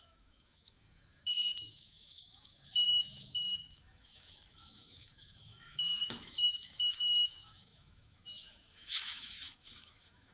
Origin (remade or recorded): remade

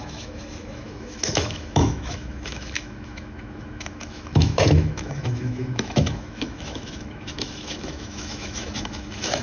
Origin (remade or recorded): remade